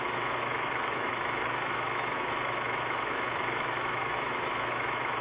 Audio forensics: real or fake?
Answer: fake